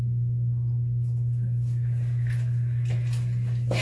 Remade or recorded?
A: recorded